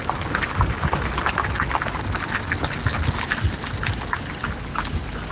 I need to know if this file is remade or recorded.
recorded